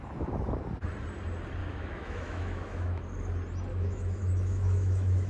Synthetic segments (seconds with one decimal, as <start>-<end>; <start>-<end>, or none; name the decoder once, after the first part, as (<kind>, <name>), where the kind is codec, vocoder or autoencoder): 1.6-3.0 (autoencoder, DAC-VAE); 3.7-5.3